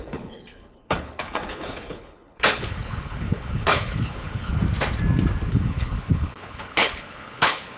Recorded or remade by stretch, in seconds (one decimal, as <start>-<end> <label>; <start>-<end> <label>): 0.0-4.5 remade; 4.5-5.5 recorded; 5.5-7.8 remade